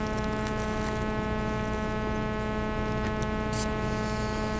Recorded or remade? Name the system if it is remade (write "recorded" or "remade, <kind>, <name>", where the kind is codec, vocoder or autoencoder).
recorded